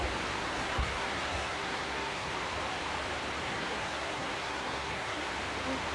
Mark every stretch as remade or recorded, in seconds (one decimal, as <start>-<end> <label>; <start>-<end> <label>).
0.0-0.4 recorded; 0.4-2.3 remade; 2.3-3.4 recorded; 3.4-5.3 remade; 5.3-5.9 recorded